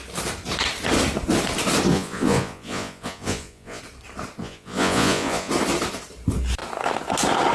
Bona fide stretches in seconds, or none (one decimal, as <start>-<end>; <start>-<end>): 0.0-1.9; 3.8-4.4; 5.5-7.5